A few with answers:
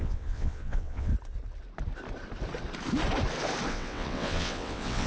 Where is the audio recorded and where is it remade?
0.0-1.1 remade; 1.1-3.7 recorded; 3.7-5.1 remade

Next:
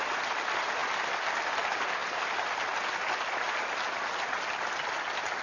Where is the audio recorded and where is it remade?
0.0-5.4 recorded

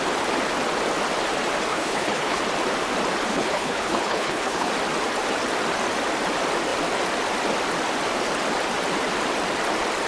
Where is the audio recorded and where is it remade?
0.0-1.7 recorded; 1.7-2.4 remade; 2.4-3.3 recorded; 3.3-4.7 remade; 4.7-10.1 recorded

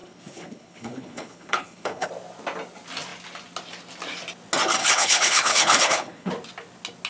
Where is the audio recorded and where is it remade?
0.0-2.1 remade; 2.1-4.8 recorded; 4.8-6.3 remade; 6.3-7.1 recorded